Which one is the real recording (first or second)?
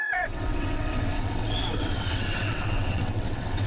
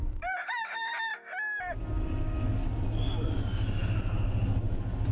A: second